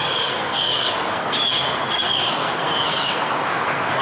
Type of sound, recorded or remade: remade